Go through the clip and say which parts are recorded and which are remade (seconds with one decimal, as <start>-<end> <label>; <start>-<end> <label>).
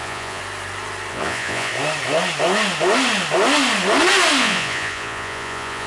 0.0-0.4 remade; 0.4-1.1 recorded; 1.1-1.7 remade; 1.7-4.4 recorded; 4.4-5.9 remade